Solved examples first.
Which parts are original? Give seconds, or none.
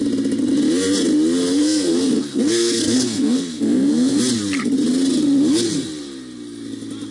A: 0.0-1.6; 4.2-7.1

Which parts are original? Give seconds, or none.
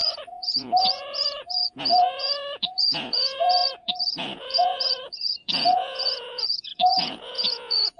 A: none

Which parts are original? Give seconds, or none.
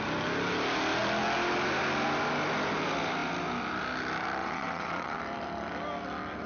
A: 0.0-4.4; 5.2-6.5